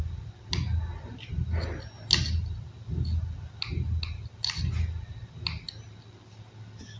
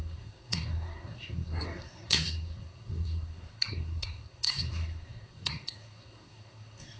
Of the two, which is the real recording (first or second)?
first